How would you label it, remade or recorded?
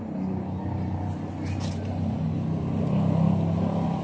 recorded